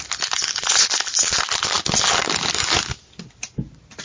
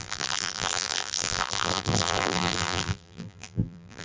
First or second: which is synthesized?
second